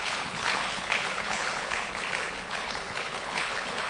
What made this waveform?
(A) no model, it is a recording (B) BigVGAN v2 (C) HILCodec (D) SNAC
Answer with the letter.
C